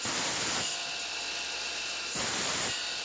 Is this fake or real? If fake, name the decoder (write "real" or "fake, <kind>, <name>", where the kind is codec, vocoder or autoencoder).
real